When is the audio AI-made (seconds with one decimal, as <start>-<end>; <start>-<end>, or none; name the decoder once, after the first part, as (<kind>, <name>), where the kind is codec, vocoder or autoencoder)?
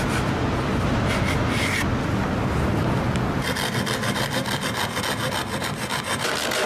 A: none